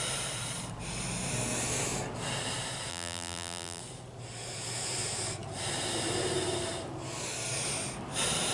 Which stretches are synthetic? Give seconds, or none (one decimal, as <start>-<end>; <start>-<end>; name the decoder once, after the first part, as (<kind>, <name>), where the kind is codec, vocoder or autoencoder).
2.9-3.8 (vocoder, BigVGAN v2)

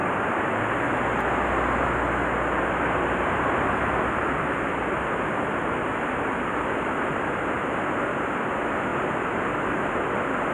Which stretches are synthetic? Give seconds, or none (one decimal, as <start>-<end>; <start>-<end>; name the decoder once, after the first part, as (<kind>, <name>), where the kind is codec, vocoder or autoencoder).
8.9-9.5 (vocoder, BigVGAN v2)